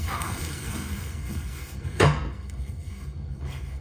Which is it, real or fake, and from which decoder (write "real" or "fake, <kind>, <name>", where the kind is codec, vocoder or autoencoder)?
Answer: fake, codec, SNAC